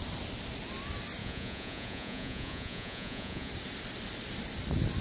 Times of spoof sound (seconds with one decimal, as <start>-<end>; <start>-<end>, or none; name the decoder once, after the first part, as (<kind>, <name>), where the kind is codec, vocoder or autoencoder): 1.2-3.5 (vocoder, Vocos)